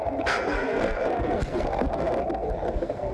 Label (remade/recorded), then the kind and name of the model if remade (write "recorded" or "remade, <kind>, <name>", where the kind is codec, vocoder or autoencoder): remade, codec, SNAC